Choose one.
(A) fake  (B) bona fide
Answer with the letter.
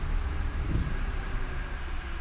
B